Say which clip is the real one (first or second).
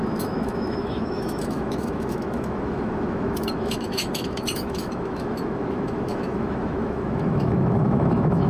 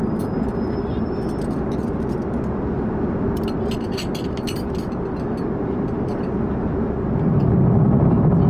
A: second